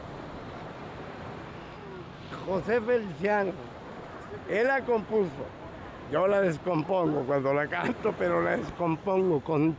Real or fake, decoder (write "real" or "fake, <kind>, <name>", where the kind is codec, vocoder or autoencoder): real